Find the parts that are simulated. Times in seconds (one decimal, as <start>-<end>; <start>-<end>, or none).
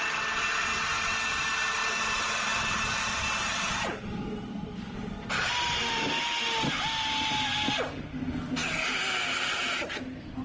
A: none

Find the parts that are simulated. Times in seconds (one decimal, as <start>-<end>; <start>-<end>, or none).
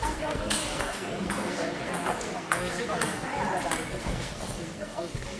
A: 0.0-3.3; 3.9-5.4